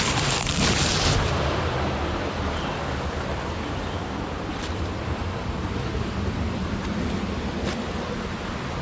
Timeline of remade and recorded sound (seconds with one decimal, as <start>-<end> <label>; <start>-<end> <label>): 0.0-0.9 recorded; 0.9-5.4 remade; 5.4-8.8 recorded